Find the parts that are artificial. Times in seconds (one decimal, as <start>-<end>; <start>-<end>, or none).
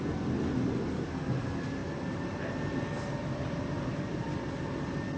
none